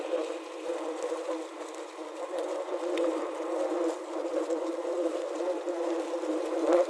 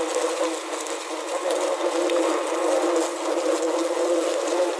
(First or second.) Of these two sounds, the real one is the second